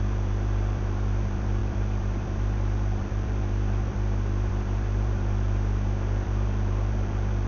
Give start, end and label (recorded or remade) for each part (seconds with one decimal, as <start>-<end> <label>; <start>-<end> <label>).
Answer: 0.0-7.5 remade